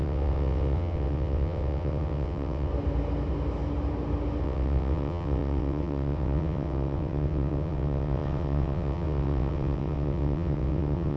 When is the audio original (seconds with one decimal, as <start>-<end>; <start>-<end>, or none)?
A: 2.7-4.4